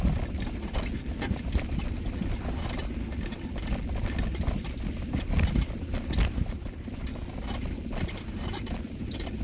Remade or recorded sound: recorded